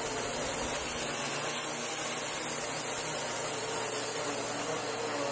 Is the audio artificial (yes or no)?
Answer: no